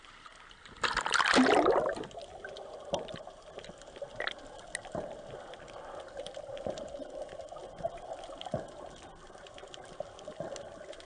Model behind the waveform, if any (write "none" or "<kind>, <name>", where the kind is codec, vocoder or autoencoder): none